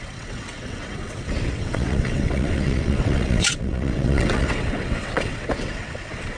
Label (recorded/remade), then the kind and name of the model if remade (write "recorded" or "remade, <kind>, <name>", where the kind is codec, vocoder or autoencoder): remade, vocoder, WaveNeXt